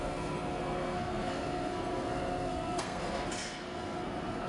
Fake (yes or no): yes